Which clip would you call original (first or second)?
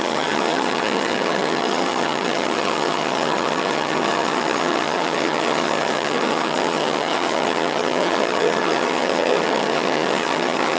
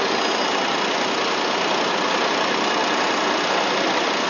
second